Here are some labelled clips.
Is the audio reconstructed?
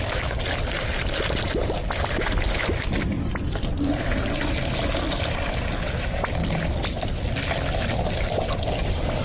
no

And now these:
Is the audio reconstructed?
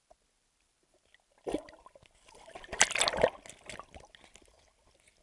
no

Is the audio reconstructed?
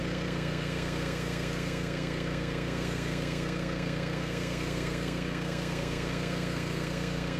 yes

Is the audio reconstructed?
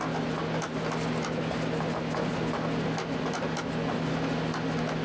no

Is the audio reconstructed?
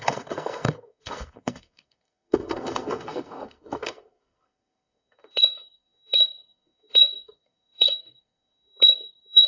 yes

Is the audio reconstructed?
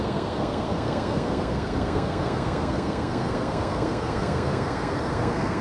yes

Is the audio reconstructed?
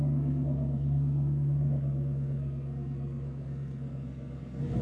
yes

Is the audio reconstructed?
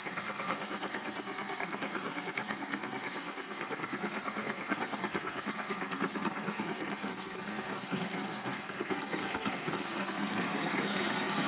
yes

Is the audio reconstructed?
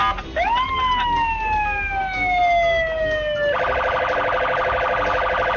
no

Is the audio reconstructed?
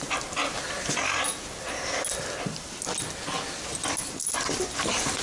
no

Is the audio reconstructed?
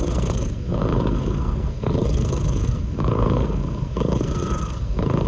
yes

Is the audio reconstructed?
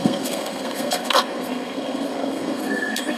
yes